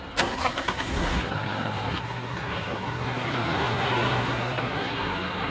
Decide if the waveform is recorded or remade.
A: remade